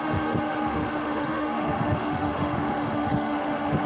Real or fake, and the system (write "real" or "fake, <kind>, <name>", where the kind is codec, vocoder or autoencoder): fake, autoencoder, DAC-VAE